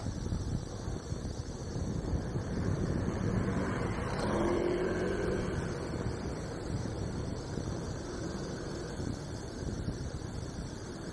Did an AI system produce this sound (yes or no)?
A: yes